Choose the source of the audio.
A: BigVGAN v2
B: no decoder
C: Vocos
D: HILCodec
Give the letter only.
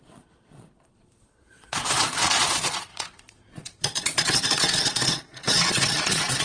C